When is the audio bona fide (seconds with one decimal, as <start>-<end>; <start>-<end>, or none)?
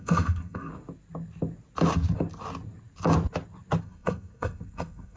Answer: 0.7-3.8